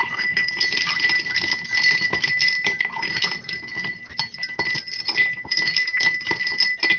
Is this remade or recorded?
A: recorded